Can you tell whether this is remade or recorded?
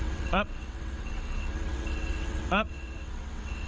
remade